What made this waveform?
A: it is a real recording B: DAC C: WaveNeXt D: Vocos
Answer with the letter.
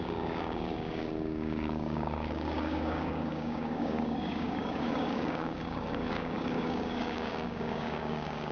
B